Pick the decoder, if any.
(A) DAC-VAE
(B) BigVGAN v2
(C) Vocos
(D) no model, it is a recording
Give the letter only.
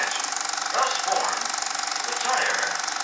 D